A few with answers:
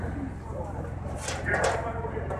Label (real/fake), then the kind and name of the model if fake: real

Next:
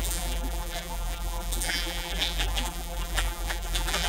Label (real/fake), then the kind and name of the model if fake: fake, vocoder, BigVGAN v2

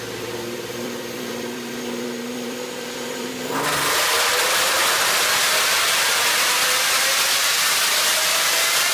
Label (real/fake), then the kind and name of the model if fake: fake, vocoder, BigVGAN v2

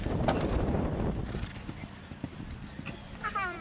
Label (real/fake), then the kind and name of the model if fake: fake, vocoder, BigVGAN v2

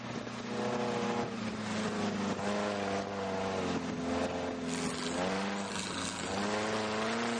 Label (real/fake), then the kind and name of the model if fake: real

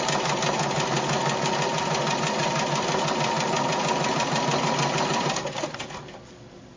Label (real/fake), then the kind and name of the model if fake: real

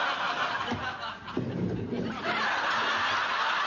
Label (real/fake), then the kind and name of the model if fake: real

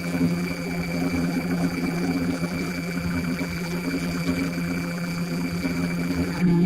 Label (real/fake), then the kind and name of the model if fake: fake, vocoder, BigVGAN v2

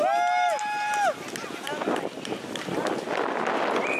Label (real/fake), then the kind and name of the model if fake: real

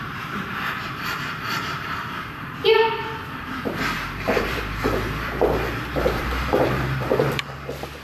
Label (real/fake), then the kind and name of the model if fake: fake, vocoder, BigVGAN v2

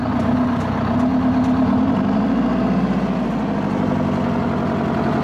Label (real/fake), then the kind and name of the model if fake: real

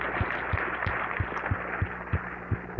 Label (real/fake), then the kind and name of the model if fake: real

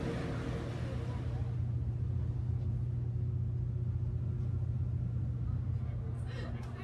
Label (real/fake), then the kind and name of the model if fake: real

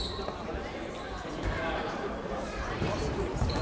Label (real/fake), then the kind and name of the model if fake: fake, vocoder, BigVGAN v2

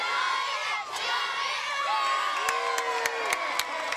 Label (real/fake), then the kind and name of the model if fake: real